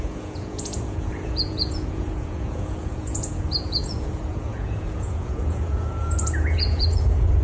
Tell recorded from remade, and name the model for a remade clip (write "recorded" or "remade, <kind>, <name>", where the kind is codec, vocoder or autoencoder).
remade, vocoder, Vocos